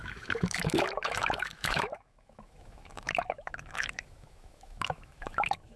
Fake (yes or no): yes